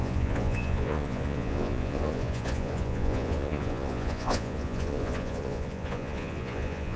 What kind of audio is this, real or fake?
fake